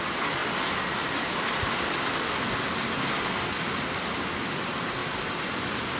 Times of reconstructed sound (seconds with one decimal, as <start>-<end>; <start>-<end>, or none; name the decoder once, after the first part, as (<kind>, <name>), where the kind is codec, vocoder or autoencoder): 5.0-6.0 (vocoder, BigVGAN v2)